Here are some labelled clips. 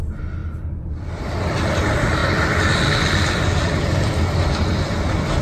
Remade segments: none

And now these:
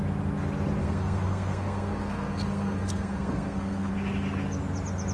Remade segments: 0.8-3.9 (codec, SNAC)

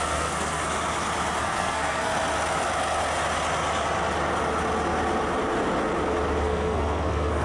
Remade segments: 0.0-0.6 (codec, SNAC); 1.4-2.1; 6.4-7.4